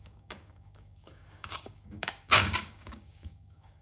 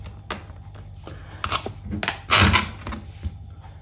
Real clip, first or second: second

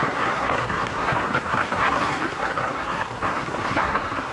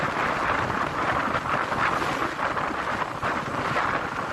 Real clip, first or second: second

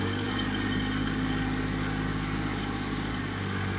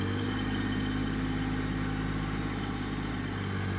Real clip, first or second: second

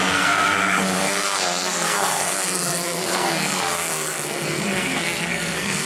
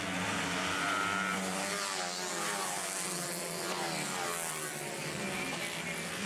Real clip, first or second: second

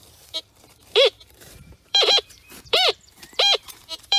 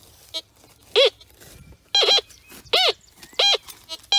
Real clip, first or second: second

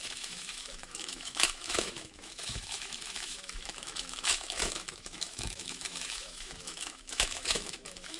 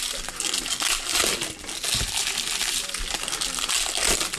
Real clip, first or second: second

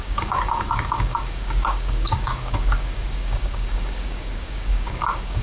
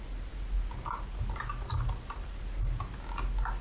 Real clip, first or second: second